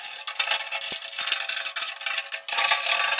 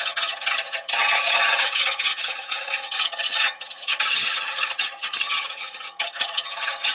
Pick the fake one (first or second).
second